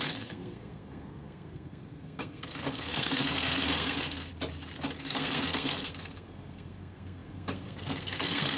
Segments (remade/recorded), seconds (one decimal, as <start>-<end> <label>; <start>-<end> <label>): 0.0-4.3 remade; 4.3-5.0 recorded; 5.0-8.6 remade